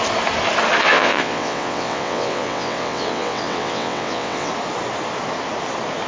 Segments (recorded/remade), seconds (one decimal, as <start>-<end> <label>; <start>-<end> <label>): 0.0-0.8 recorded; 0.8-4.5 remade; 4.5-6.1 recorded